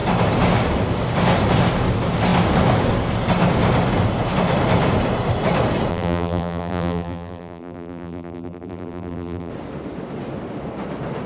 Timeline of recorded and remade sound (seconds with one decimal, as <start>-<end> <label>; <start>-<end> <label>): 0.0-5.9 recorded; 5.9-9.5 remade; 9.5-11.3 recorded